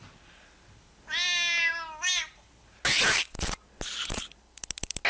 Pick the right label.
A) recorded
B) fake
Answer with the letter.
A